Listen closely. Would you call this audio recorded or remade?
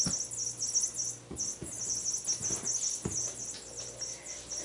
recorded